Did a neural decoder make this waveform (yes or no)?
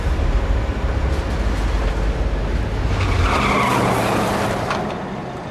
no